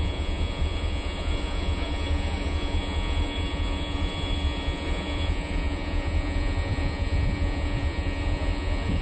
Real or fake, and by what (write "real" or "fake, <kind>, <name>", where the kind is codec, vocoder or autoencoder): fake, vocoder, Vocos